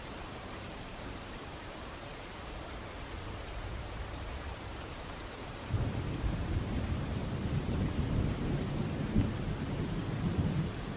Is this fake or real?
fake